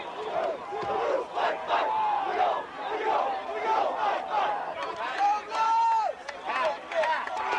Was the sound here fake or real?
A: real